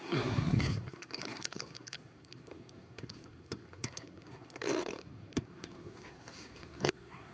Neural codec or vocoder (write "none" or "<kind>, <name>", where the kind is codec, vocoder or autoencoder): codec, SNAC